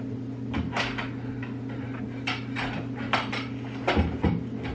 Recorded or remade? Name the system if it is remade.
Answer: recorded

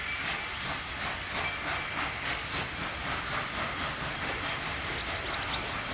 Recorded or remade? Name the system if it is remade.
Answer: recorded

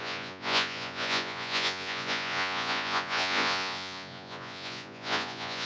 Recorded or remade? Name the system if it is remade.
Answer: remade, vocoder, Vocos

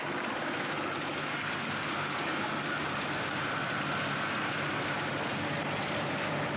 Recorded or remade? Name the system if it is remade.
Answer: recorded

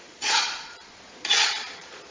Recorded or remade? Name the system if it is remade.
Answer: remade, vocoder, Vocos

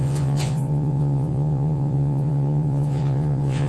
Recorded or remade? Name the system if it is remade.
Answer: remade, vocoder, Vocos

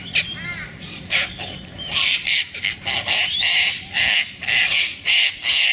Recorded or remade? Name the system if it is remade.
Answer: recorded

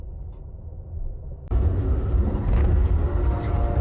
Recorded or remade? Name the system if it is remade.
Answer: recorded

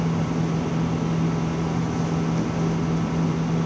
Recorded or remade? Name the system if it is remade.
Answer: recorded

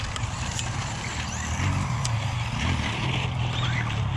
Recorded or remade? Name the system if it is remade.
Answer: recorded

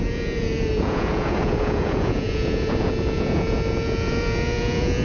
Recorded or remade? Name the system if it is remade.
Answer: remade, vocoder, Vocos